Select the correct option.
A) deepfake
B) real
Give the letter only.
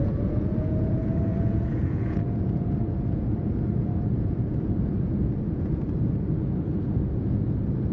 A